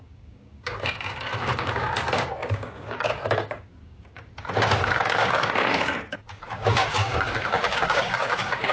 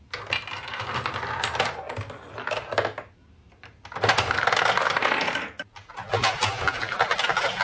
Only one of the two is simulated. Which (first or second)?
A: first